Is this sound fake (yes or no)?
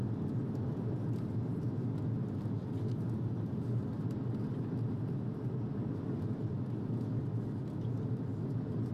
no